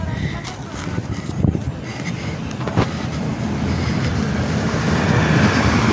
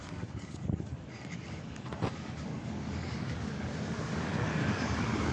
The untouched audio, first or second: first